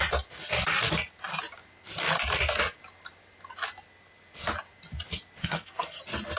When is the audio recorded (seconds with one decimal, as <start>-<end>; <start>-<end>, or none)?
0.0-5.4; 6.0-6.4